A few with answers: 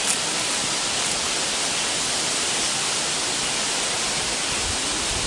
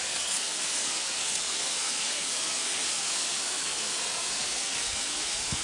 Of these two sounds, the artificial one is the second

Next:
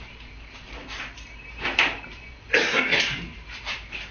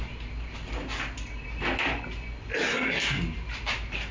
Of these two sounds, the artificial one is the first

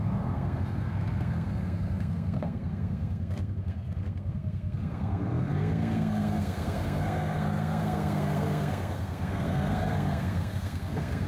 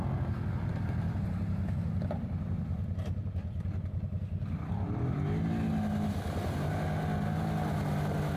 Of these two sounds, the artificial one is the first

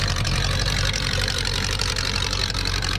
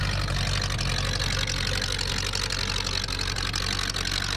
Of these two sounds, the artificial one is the first